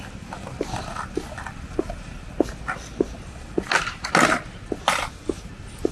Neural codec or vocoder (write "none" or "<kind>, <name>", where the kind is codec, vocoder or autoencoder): none